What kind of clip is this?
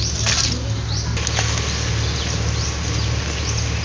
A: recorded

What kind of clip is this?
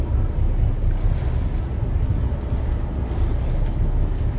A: recorded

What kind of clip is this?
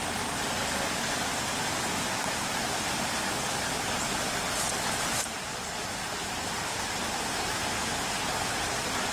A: recorded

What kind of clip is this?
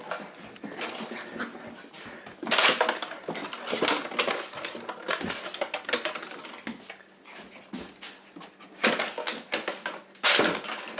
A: recorded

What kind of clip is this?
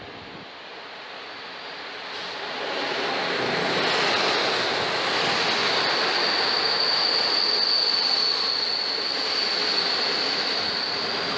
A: recorded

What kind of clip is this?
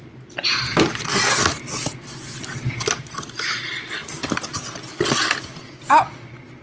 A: recorded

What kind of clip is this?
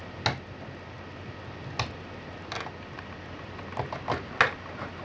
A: recorded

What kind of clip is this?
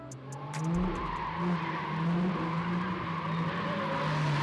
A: recorded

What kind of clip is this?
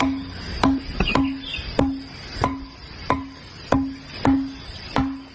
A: recorded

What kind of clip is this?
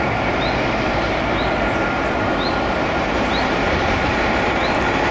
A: remade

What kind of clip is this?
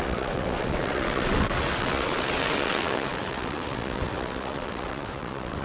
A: remade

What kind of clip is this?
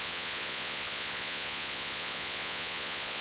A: remade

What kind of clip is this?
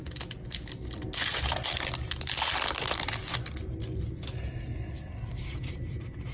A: recorded